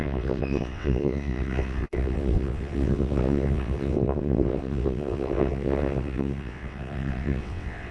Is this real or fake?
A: fake